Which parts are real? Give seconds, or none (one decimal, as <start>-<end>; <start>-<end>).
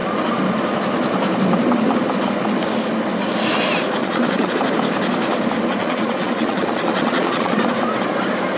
0.0-4.0; 4.5-5.8; 7.7-8.6